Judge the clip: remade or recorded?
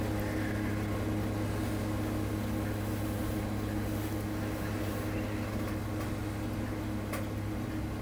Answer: recorded